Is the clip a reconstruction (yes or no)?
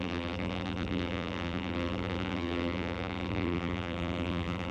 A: yes